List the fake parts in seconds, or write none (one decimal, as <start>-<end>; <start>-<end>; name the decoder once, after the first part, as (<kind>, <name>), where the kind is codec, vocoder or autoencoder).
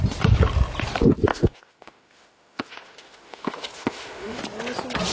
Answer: 1.3-4.4 (autoencoder, DAC-VAE)